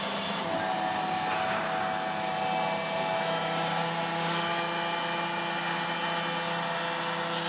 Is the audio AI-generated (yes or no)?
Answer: no